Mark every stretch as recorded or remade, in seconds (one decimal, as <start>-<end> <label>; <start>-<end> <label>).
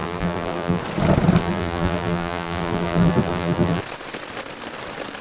0.0-0.8 remade; 0.8-1.4 recorded; 1.4-3.8 remade; 3.8-5.2 recorded